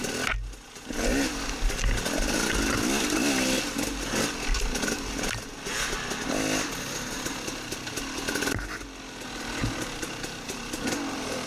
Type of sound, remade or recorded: recorded